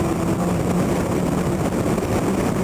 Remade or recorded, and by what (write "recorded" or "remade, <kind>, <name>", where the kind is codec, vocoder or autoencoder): recorded